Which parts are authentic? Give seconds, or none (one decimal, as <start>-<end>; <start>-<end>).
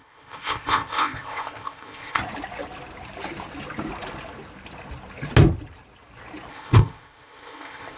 2.2-6.5